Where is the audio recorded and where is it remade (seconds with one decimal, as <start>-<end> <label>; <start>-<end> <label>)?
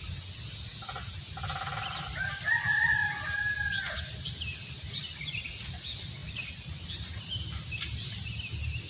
0.0-8.9 recorded